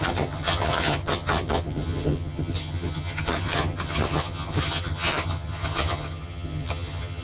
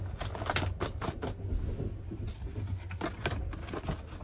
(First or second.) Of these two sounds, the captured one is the second